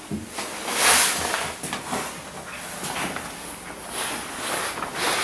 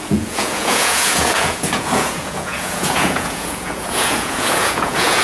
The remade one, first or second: second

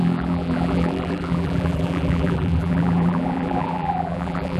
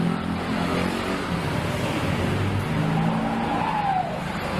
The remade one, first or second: first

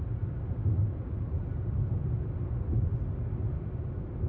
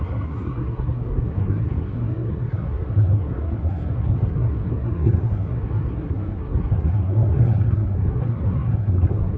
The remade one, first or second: second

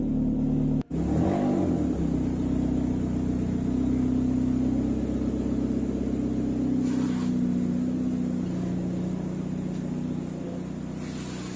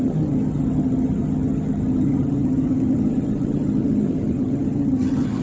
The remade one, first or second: second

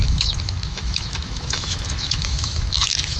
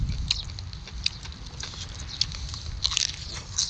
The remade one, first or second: first